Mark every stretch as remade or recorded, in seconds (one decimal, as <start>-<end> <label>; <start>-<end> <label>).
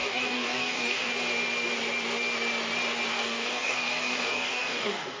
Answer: 0.0-1.1 remade; 1.1-3.1 recorded; 3.1-5.2 remade